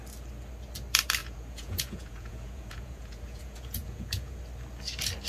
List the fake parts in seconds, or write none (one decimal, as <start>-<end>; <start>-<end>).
1.2-4.4